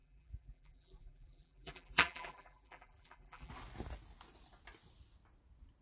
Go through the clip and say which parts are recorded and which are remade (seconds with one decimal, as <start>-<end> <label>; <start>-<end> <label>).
0.0-3.5 remade; 3.5-5.8 recorded